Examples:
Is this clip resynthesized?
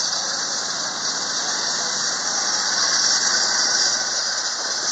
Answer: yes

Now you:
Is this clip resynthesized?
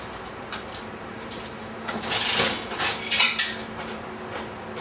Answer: no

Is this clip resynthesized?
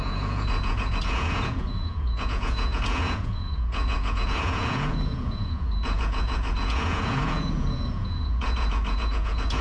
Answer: yes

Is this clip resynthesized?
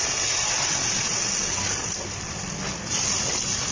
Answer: no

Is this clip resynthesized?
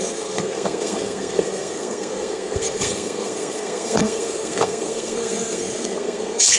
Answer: yes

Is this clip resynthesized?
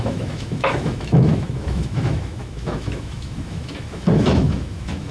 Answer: yes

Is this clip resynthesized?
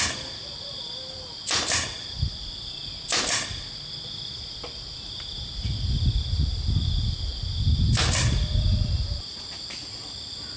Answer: no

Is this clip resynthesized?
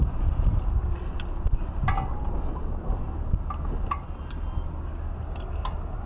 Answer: no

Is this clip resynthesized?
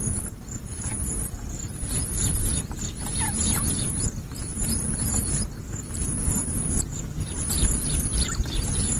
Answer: yes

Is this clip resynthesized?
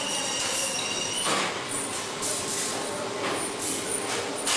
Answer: yes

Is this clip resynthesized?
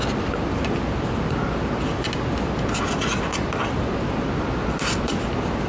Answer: no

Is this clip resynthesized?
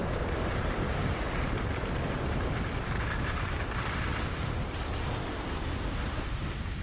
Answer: no